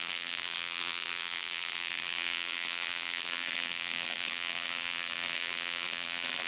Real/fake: fake